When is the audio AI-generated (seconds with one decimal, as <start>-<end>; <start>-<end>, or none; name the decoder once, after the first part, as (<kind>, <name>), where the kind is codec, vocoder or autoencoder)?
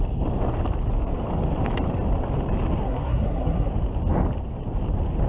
2.8-3.7 (codec, SNAC)